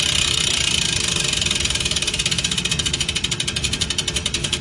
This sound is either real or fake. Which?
fake